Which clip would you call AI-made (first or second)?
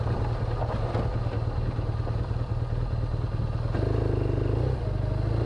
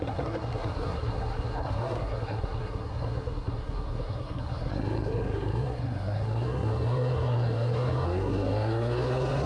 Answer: second